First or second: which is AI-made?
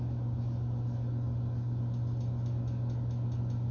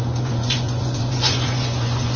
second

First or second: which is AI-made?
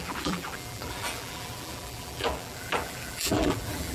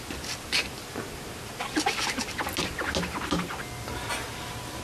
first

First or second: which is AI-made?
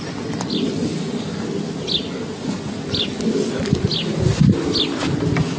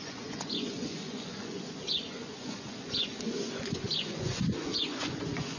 second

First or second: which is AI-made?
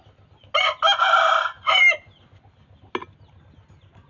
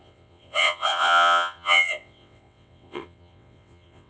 second